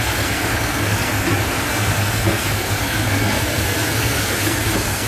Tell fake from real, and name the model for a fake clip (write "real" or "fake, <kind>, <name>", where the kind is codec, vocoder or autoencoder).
fake, codec, SNAC